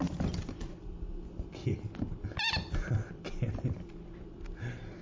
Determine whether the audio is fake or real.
real